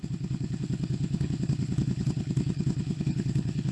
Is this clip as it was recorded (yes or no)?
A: no